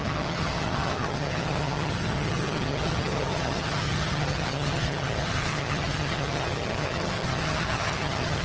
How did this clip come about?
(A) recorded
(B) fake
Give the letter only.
B